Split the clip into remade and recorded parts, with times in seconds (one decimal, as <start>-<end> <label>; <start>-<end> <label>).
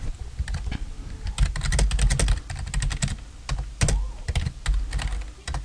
0.0-5.6 recorded